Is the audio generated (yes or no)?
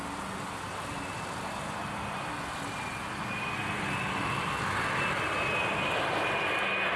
no